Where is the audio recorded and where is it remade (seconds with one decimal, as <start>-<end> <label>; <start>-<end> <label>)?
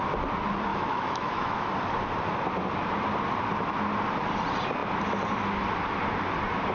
0.0-0.7 recorded; 0.7-1.7 remade; 1.7-6.7 recorded